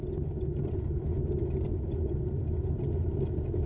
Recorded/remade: recorded